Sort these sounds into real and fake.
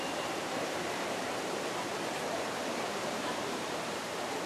fake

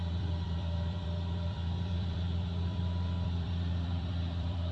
fake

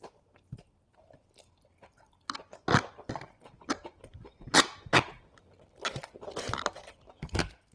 real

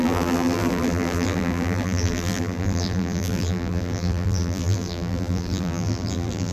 fake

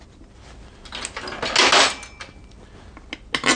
real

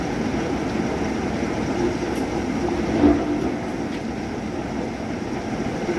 real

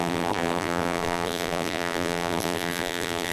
fake